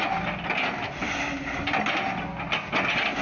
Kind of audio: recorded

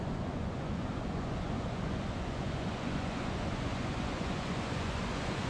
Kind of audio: remade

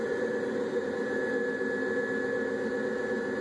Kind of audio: recorded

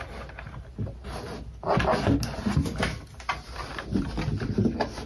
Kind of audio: recorded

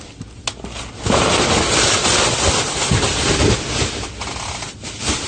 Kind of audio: recorded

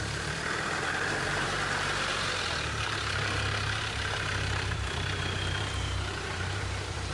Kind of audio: remade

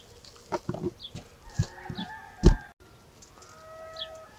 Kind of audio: recorded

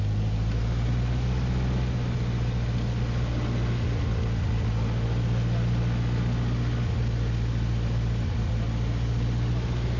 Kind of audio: recorded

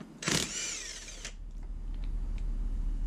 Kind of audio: recorded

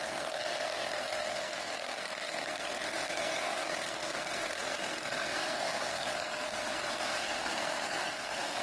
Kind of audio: remade